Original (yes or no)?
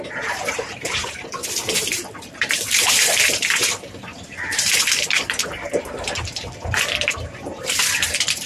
no